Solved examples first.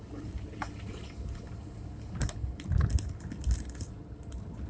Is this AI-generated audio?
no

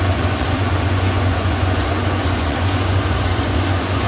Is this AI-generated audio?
yes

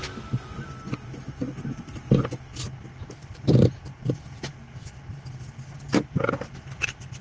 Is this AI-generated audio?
no